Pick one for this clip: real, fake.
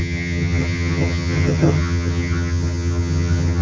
fake